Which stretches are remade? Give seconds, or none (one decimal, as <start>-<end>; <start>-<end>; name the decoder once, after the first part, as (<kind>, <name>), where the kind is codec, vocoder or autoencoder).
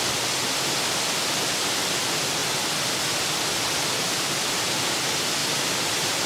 5.4-6.3 (vocoder, BigVGAN v2)